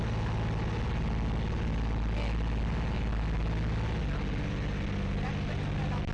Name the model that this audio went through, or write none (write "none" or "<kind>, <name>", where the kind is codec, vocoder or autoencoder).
none